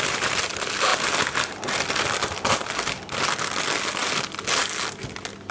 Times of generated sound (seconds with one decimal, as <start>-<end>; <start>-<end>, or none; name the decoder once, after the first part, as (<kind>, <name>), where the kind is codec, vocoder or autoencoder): none